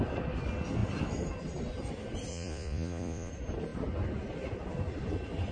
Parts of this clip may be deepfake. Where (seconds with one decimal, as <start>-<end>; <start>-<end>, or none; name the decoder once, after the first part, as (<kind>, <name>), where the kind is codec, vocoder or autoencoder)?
2.3-3.3 (vocoder, Vocos)